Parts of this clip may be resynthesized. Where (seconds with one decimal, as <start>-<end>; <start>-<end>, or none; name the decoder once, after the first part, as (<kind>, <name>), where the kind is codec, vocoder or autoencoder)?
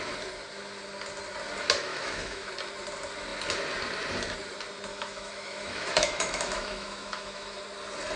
1.9-2.5 (autoencoder, DAC-VAE); 4.9-7.6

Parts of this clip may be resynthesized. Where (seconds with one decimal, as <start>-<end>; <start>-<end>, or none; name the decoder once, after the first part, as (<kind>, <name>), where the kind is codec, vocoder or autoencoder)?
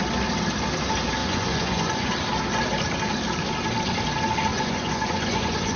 1.2-2.1 (vocoder, Vocos); 4.5-5.8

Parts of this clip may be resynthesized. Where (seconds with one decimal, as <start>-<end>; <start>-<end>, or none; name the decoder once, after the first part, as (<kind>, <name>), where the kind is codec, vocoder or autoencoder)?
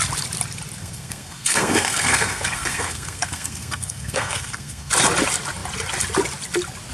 0.8-4.9 (codec, SNAC)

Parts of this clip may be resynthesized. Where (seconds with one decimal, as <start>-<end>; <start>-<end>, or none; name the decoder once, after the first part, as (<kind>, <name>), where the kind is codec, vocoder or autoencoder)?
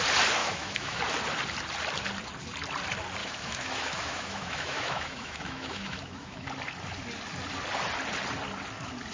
0.4-1.0 (autoencoder, DAC-VAE); 3.2-6.5